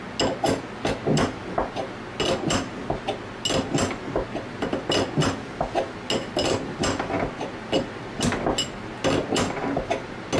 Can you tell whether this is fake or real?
real